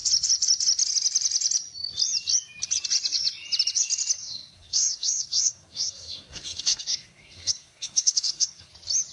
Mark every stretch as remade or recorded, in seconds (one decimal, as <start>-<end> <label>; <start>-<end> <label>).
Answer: 0.0-4.2 recorded; 4.2-8.7 remade; 8.7-9.1 recorded